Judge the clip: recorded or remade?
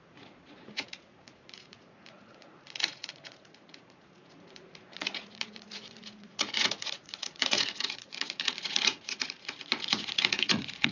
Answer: remade